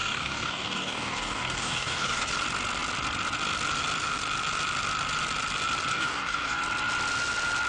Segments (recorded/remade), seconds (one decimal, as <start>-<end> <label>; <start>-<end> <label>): 0.0-2.3 remade; 2.3-5.9 recorded; 5.9-6.6 remade; 6.6-7.7 recorded